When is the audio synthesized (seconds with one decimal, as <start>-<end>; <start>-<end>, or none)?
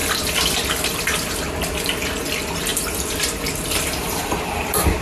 none